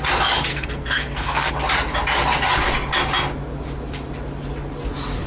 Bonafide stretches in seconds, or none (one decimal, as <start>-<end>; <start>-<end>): 0.0-0.5; 1.5-5.3